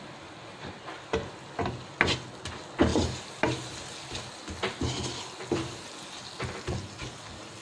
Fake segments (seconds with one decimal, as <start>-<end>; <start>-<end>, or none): none